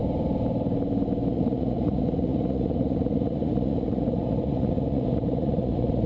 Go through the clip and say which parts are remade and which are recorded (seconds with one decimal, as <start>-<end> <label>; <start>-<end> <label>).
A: 0.0-1.3 recorded; 1.3-6.1 remade